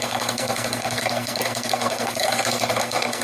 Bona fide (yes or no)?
no